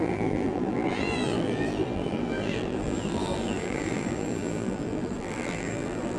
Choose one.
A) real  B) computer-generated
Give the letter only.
B